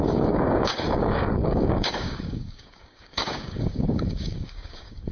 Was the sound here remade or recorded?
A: remade